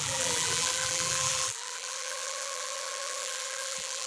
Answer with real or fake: fake